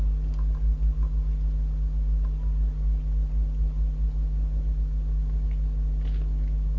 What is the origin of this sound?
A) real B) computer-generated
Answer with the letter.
A